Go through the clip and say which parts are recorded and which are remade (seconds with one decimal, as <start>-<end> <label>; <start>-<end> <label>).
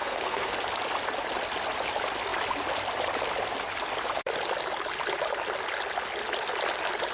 0.0-0.5 remade; 0.5-7.1 recorded